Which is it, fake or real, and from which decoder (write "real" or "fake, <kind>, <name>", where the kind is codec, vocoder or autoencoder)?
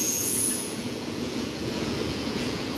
fake, vocoder, Vocos